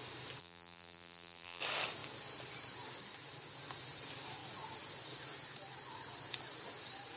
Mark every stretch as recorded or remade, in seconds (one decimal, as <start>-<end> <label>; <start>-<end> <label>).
0.0-0.4 recorded; 0.4-1.6 remade; 1.6-7.2 recorded